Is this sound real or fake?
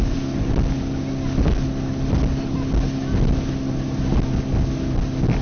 real